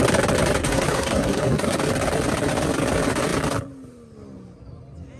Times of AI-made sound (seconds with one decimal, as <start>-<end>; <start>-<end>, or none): 0.6-1.8